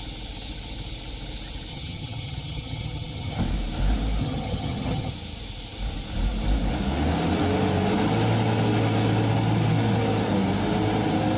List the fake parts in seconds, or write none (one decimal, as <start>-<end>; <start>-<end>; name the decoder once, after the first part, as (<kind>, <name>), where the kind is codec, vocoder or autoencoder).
1.7-3.4 (vocoder, HiFi-GAN); 4.2-5.1